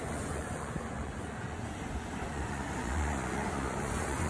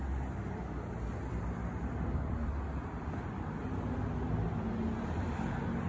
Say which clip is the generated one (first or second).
first